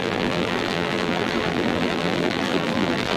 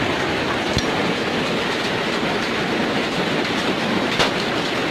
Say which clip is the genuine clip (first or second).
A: second